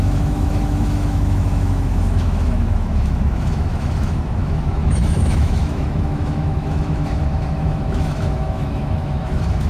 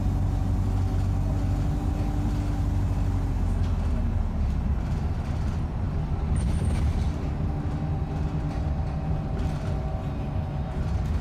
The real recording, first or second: second